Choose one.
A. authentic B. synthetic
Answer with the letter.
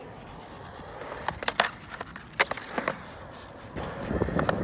B